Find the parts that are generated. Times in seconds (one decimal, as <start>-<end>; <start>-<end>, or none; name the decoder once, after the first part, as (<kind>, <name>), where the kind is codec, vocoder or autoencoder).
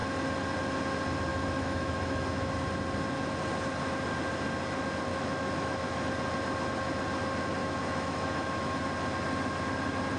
1.3-2.5 (autoencoder, DAC-VAE); 5.1-6.1; 7.6-8.8